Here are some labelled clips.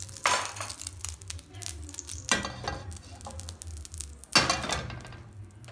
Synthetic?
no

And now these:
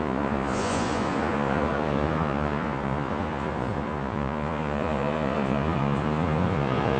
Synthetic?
yes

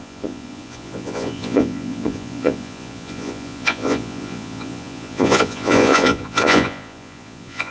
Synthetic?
yes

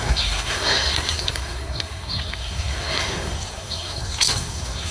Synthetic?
yes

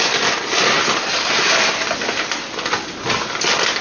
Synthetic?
no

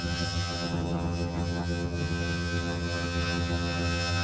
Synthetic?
yes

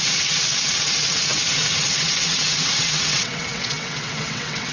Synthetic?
yes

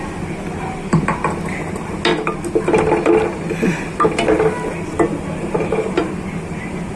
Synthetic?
no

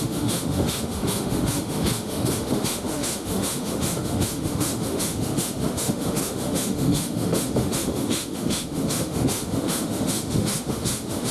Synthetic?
yes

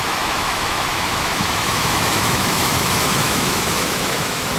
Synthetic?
yes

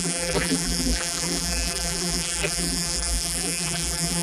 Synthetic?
yes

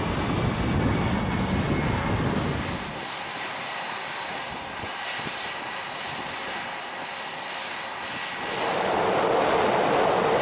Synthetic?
no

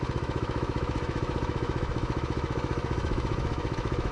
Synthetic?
yes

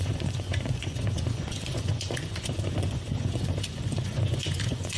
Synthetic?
yes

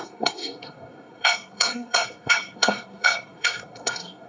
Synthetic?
yes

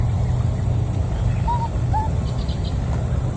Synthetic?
no